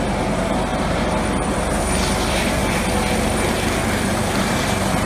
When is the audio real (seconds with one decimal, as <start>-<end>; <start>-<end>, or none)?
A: 0.0-0.7; 1.8-5.1